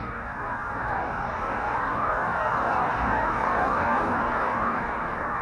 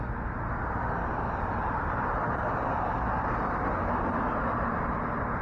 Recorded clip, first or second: second